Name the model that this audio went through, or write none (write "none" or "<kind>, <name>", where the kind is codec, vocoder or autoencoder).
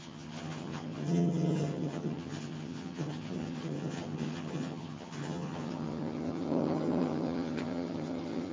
vocoder, HiFi-GAN